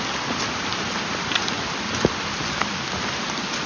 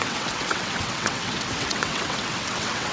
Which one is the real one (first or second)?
first